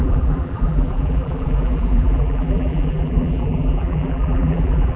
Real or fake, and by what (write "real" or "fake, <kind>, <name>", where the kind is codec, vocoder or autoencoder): fake, vocoder, BigVGAN v2